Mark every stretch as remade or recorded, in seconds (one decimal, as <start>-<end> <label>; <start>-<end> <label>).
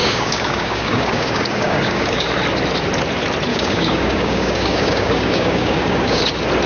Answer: 0.0-2.3 remade; 2.3-3.5 recorded; 3.5-6.2 remade; 6.2-6.7 recorded